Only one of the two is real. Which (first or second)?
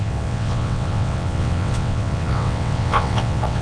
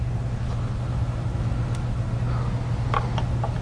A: second